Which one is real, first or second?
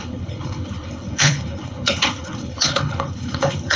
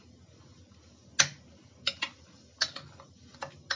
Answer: second